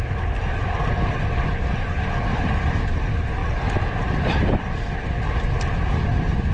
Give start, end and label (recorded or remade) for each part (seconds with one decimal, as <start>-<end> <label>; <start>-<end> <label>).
0.0-6.5 recorded